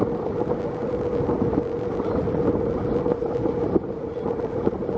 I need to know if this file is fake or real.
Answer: fake